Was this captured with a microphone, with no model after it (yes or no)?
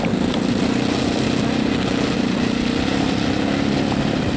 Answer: no